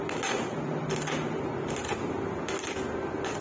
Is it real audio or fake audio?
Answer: real